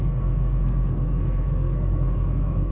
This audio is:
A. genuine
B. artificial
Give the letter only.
B